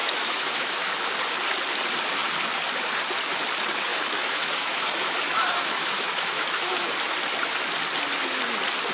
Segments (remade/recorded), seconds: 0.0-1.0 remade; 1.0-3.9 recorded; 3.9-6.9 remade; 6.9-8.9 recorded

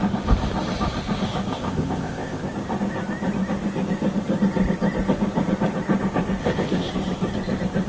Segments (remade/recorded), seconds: 0.0-1.5 recorded; 1.5-2.5 remade; 2.5-6.4 recorded; 6.4-6.9 remade; 6.9-7.9 recorded

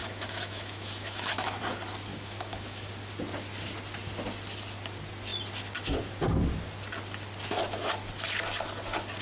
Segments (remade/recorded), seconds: 0.0-1.6 remade; 1.6-2.1 recorded; 2.1-2.9 remade; 2.9-9.2 recorded

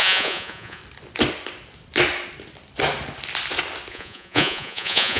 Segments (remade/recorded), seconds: 0.0-0.8 remade; 0.8-3.9 recorded; 3.9-5.2 remade

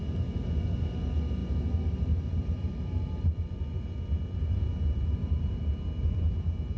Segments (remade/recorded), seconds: 0.0-1.4 recorded; 1.4-3.6 remade; 3.6-5.2 recorded; 5.2-5.7 remade; 5.7-6.8 recorded

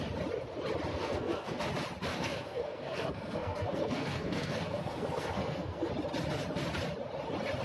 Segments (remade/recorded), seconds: 0.0-0.9 recorded; 0.9-1.6 remade; 1.6-2.1 recorded; 2.1-5.9 remade; 5.9-7.6 recorded

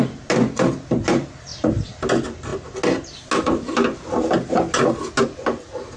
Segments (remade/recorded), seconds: 0.0-1.5 recorded; 1.5-2.1 remade; 2.1-6.0 recorded